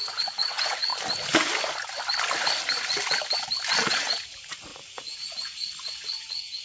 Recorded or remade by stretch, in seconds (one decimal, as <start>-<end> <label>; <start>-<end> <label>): 0.0-0.9 remade; 0.9-4.0 recorded; 4.0-6.6 remade